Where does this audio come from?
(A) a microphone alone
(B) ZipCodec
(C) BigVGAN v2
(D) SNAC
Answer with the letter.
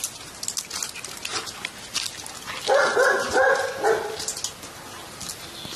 A